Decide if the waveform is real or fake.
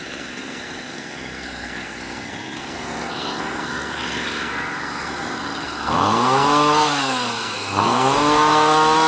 fake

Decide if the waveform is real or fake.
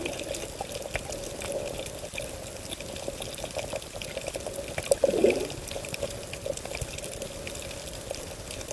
real